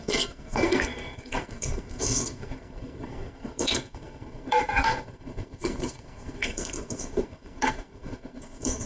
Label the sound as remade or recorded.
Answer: remade